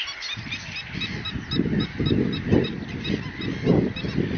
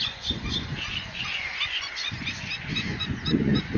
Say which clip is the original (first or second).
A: first